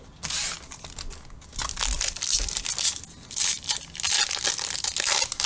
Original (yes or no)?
yes